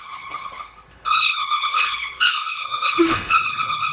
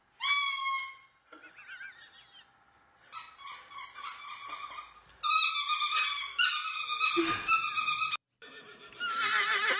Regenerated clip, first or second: first